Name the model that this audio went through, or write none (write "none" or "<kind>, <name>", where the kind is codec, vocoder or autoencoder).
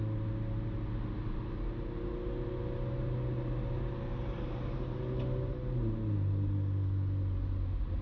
none